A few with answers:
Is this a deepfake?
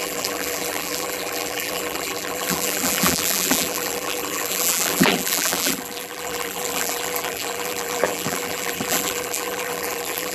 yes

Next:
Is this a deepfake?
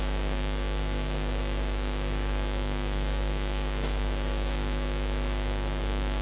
yes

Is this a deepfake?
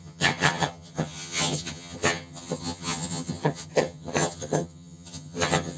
yes